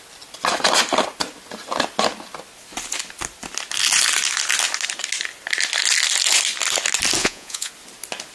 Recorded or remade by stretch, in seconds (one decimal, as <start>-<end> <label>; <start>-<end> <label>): 0.0-7.2 recorded; 7.2-7.7 remade; 7.7-8.3 recorded